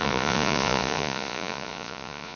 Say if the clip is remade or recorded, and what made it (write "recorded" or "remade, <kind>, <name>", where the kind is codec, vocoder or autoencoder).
remade, vocoder, Vocos